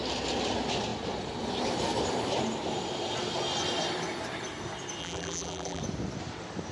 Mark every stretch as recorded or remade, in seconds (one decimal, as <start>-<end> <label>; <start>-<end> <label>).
0.0-5.0 recorded; 5.0-5.8 remade; 5.8-6.7 recorded